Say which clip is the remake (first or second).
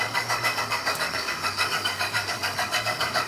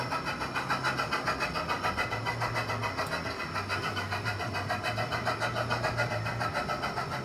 first